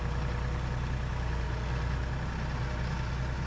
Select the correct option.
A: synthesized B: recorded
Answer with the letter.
B